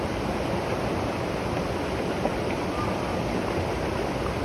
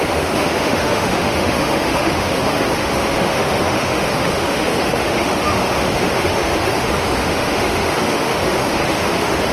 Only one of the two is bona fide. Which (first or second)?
first